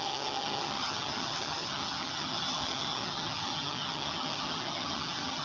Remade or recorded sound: remade